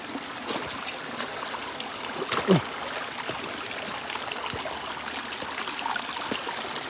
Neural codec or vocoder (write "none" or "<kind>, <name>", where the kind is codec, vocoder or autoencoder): none